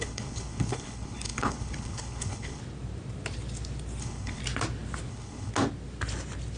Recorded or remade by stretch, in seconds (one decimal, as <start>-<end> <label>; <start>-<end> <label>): 0.0-2.6 remade; 2.6-4.0 recorded; 4.0-4.4 remade; 4.4-5.1 recorded; 5.1-5.5 remade; 5.5-6.6 recorded